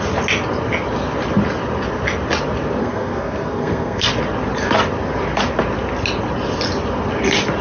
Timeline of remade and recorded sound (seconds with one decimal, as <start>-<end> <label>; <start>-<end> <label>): 0.0-2.8 recorded; 2.8-4.1 remade; 4.1-7.6 recorded